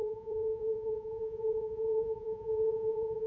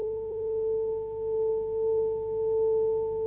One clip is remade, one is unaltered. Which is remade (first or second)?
first